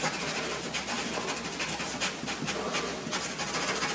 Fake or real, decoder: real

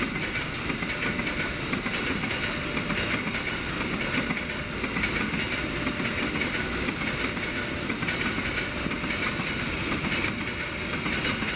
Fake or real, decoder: real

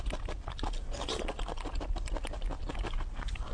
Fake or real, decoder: real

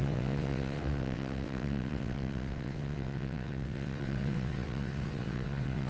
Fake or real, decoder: fake, vocoder, WaveNeXt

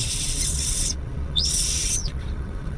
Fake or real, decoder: fake, vocoder, WaveNeXt